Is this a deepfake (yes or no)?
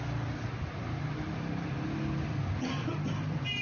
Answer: no